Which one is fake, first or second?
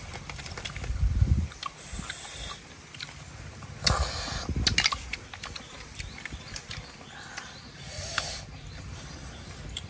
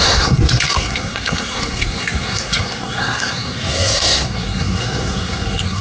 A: second